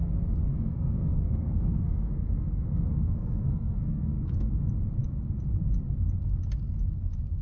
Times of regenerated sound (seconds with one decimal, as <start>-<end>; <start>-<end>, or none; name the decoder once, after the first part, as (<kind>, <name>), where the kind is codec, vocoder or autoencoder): 0.5-4.5 (codec, SNAC)